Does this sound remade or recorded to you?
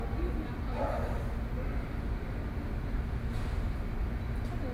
recorded